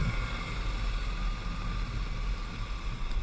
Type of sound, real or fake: real